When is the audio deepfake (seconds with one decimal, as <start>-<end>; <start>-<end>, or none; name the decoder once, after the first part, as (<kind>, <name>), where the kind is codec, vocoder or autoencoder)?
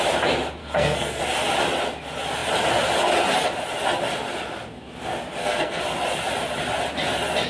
0.6-1.2 (codec, SNAC); 5.3-5.8